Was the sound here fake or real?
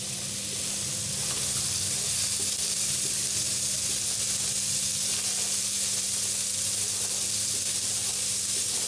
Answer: real